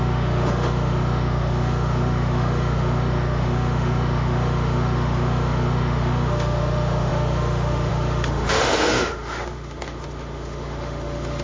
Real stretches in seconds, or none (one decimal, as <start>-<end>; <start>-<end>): none